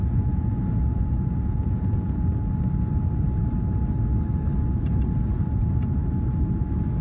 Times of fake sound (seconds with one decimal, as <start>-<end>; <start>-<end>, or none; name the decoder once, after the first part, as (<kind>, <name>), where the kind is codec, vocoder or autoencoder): 0.0-2.3 (vocoder, Vocos); 5.5-6.0